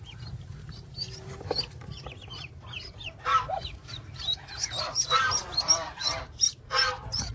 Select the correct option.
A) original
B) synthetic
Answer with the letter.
B